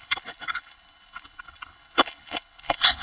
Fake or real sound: fake